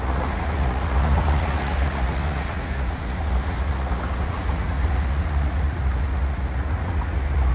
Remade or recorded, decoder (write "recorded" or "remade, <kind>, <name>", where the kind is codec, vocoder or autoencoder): remade, vocoder, Vocos